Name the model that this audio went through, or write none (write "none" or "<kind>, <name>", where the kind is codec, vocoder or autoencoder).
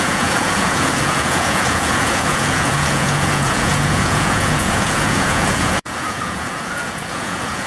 vocoder, Vocos